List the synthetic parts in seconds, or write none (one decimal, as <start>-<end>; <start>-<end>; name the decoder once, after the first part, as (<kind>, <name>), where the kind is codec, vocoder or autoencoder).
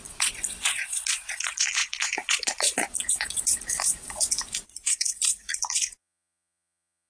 0.0-7.1 (vocoder, Vocos)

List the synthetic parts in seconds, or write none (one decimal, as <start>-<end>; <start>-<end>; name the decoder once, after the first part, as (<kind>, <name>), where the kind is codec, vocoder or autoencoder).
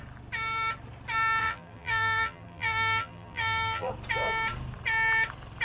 1.4-3.9 (vocoder, BigVGAN v2)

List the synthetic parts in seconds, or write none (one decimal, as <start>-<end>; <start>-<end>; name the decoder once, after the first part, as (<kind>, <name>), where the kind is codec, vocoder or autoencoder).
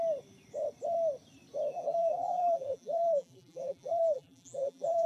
1.7-5.1 (vocoder, BigVGAN v2)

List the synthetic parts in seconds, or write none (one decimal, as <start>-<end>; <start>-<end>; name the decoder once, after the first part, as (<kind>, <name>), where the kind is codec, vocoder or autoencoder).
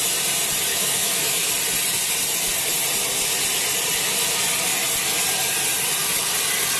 0.7-1.5 (autoencoder, DAC-VAE)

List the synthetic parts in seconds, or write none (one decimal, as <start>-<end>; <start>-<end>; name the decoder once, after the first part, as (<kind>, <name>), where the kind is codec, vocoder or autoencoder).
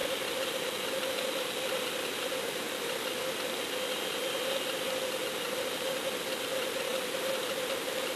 none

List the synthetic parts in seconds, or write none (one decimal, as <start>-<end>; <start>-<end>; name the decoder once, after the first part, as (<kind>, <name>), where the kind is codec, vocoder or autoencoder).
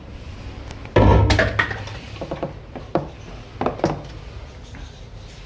none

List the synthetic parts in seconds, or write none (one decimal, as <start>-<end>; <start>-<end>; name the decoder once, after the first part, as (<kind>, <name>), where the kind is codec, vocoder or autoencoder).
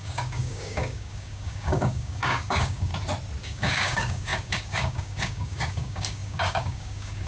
0.0-2.9 (codec, DAC); 3.4-7.3